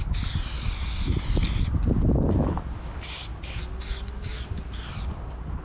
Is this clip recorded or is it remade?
recorded